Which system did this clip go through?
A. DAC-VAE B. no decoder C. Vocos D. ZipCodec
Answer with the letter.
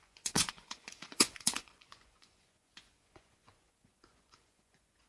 C